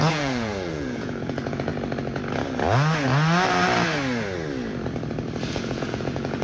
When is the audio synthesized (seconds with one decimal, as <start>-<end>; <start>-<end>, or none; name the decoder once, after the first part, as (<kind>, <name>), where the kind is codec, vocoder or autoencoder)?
0.0-1.7 (vocoder, Vocos); 5.5-6.4